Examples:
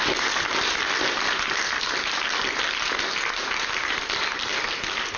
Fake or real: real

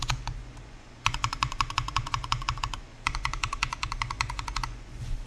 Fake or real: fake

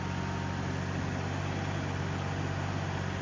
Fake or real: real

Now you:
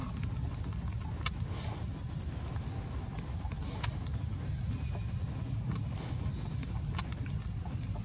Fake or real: real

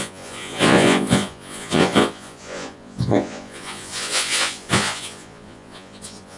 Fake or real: fake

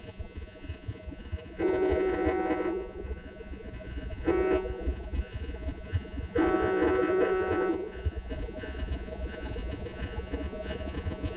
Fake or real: fake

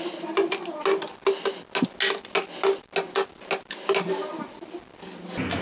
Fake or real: real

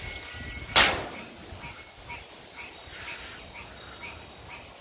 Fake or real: real